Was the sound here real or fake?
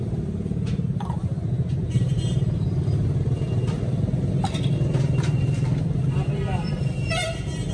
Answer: fake